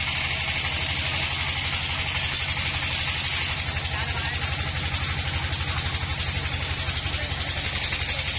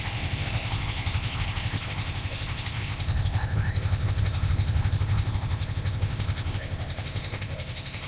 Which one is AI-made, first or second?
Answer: second